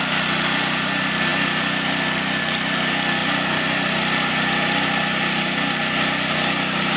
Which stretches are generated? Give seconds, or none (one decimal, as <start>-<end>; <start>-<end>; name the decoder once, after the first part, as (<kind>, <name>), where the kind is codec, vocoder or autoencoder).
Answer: none